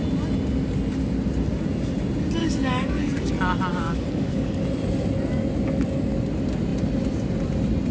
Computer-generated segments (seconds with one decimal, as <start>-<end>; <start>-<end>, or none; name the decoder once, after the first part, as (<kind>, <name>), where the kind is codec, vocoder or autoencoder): 2.4-3.3 (codec, DAC); 3.7-4.6